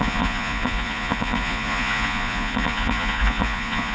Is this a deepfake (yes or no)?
yes